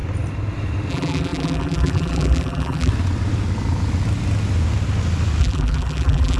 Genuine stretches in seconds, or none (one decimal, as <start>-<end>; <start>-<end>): 0.0-0.9; 2.9-5.4